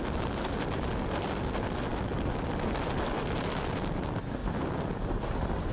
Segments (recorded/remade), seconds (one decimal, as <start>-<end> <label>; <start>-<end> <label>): 0.0-5.7 recorded